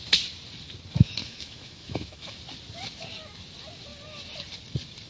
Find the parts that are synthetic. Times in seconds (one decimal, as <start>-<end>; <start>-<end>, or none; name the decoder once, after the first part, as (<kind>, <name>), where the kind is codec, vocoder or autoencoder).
1.2-2.4 (autoencoder, DAC-VAE)